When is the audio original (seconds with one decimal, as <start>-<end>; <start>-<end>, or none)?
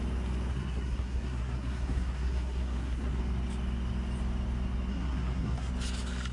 0.0-0.5; 3.2-4.9; 5.7-6.3